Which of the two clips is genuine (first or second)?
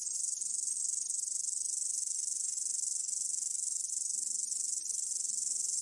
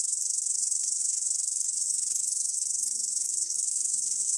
first